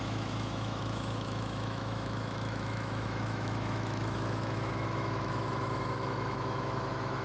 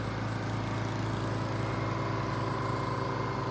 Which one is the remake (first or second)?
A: first